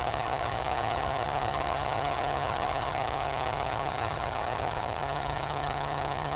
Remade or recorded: remade